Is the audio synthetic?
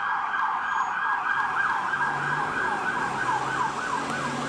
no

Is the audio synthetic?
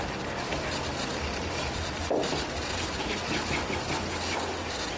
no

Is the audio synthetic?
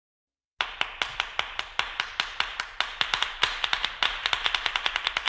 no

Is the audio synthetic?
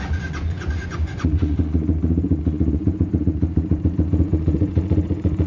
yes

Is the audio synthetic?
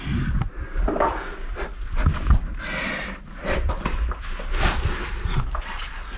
no